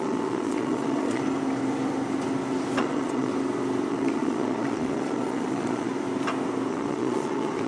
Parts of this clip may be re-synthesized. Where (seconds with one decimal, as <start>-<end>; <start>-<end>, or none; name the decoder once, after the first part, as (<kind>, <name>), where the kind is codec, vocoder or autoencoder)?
0.0-1.2 (vocoder, Vocos); 2.8-3.3; 3.9-5.9; 6.7-7.7

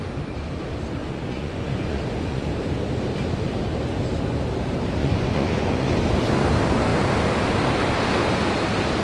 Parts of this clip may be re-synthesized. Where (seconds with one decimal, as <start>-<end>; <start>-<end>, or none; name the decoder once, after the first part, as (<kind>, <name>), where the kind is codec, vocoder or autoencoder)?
1.0-2.5 (vocoder, Vocos); 5.0-5.9

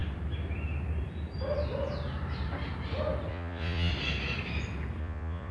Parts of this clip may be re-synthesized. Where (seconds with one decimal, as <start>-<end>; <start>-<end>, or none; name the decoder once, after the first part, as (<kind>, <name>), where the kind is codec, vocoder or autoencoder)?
3.3-3.9 (vocoder, Vocos); 5.0-5.5

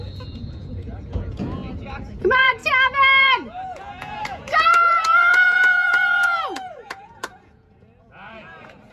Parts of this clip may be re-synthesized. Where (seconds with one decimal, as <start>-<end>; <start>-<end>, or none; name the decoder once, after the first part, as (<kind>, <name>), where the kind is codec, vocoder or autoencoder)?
0.0-1.6 (vocoder, Vocos); 2.2-2.6; 3.2-8.9

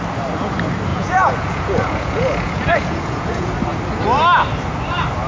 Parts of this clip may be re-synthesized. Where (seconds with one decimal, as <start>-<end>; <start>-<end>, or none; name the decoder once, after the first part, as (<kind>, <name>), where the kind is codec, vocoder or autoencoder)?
0.9-3.5 (vocoder, Vocos)

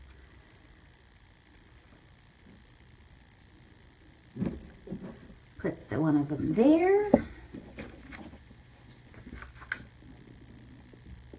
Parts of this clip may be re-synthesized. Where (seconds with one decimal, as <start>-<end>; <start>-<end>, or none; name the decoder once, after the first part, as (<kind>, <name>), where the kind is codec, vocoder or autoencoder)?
5.8-9.4 (vocoder, Vocos)